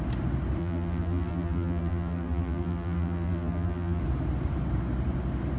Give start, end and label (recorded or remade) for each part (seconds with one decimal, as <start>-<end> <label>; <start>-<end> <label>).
0.0-0.6 recorded; 0.6-4.0 remade; 4.0-5.6 recorded